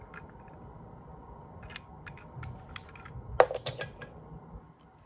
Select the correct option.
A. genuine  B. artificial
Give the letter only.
A